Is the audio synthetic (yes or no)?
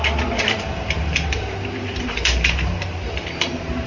yes